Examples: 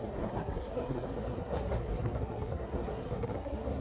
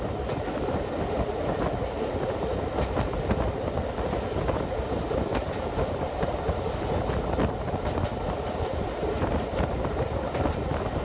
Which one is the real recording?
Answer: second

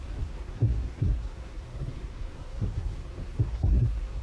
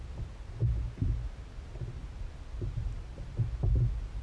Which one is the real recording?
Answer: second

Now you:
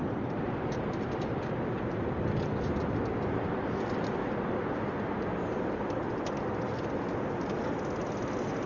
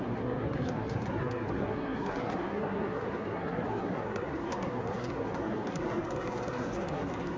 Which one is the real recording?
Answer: first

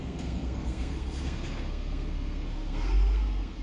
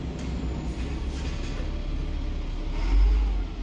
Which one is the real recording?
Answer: second